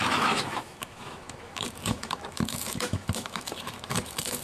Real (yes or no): no